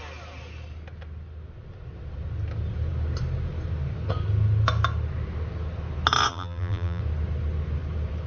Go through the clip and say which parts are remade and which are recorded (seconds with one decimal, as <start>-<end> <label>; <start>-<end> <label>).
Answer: 0.0-6.3 recorded; 6.3-7.0 remade; 7.0-8.3 recorded